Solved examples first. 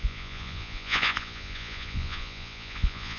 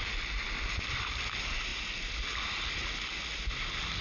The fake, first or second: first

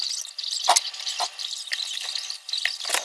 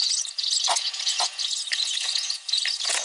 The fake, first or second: second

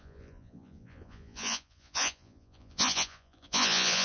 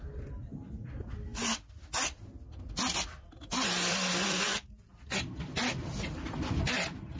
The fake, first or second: first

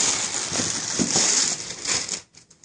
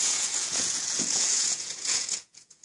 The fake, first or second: second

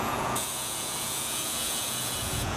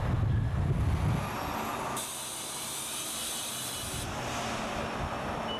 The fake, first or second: first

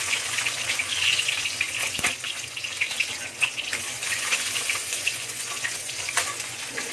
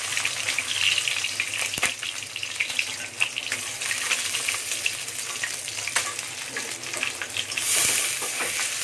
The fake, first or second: first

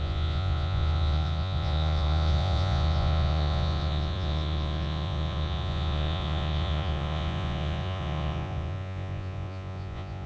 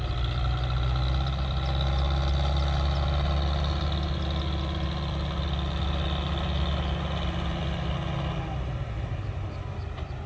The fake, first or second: first